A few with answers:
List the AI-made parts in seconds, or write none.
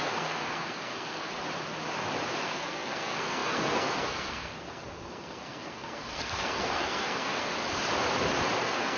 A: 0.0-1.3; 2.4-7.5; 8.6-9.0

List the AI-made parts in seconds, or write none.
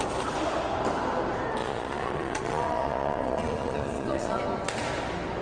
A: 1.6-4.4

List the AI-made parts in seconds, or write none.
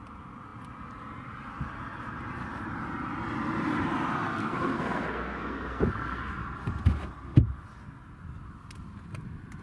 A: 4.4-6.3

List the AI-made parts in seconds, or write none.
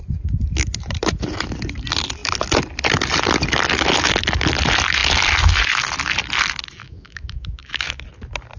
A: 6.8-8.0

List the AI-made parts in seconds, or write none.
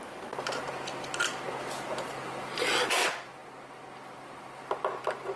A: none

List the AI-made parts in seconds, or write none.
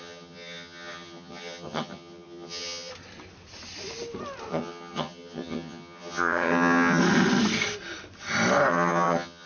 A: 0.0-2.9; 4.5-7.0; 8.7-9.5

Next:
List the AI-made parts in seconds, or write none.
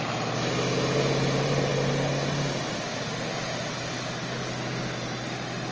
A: none